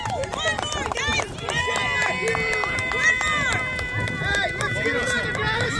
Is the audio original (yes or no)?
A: yes